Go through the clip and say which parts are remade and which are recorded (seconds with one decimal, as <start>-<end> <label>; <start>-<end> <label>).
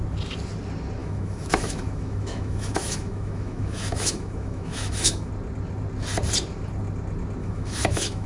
0.0-1.0 recorded; 1.0-5.3 remade; 5.3-7.4 recorded; 7.4-8.3 remade